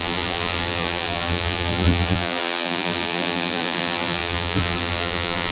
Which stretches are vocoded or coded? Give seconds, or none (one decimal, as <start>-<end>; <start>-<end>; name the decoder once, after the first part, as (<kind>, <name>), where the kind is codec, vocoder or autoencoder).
0.0-5.5 (vocoder, BigVGAN v2)